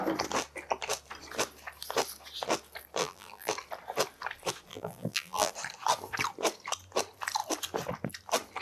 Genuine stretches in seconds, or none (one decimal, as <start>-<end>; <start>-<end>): 0.0-3.0; 3.5-4.7; 5.5-8.6